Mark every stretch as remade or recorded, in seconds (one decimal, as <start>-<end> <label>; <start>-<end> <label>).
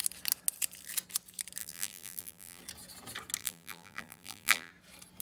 0.0-1.6 recorded; 1.6-2.6 remade; 2.6-3.4 recorded; 3.4-4.7 remade; 4.7-5.2 recorded